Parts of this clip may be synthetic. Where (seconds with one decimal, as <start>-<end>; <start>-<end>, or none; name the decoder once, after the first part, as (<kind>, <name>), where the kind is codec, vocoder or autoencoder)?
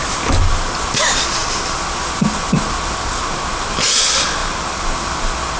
none